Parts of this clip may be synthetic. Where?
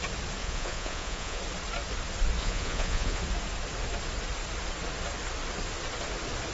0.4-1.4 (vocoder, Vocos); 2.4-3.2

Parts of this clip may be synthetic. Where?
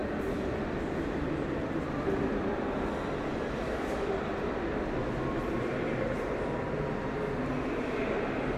0.0-4.8 (vocoder, BigVGAN v2)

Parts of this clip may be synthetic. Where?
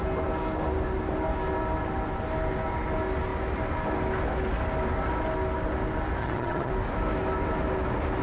6.2-6.7 (vocoder, HiFi-GAN)